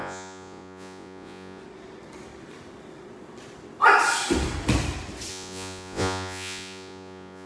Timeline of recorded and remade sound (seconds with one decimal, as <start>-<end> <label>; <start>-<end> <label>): 0.0-1.6 remade; 1.6-5.3 recorded; 5.3-7.5 remade